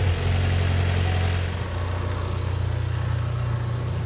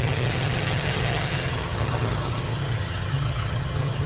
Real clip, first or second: first